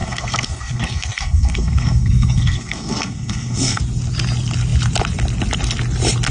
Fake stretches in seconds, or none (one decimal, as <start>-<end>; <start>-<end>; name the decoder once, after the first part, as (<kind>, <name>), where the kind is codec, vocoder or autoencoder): 0.0-3.8 (codec, SNAC)